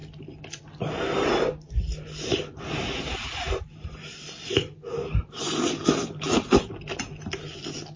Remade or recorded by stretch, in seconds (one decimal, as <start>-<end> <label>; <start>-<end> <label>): 0.0-2.3 recorded; 2.3-6.7 remade; 6.7-8.0 recorded